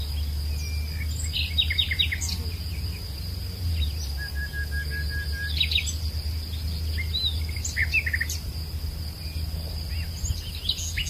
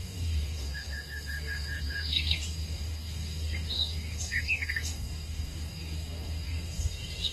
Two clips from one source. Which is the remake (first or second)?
second